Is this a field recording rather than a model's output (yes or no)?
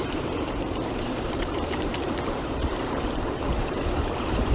no